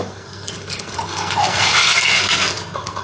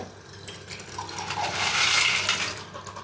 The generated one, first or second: first